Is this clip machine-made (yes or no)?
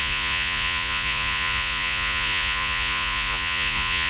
yes